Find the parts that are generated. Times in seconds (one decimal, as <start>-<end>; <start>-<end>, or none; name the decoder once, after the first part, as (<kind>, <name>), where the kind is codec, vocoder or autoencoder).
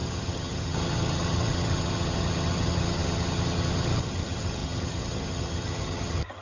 0.0-6.4 (vocoder, HiFi-GAN)